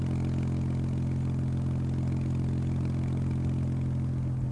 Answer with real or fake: real